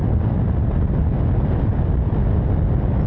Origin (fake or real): real